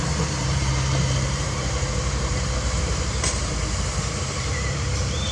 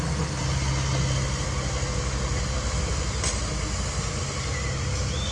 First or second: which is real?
second